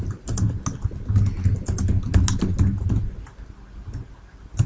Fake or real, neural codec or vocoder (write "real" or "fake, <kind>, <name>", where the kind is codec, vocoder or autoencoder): real